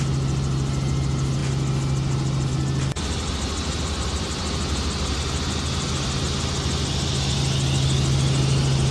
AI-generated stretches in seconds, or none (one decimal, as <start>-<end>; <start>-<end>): none